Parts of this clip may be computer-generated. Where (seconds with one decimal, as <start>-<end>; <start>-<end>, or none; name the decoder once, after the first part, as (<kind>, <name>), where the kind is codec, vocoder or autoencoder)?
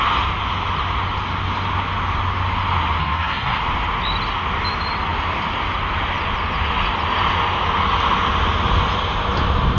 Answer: 3.0-3.6 (codec, SNAC)